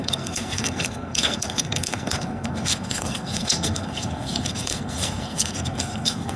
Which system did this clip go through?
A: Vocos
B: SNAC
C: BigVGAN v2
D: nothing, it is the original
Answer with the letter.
B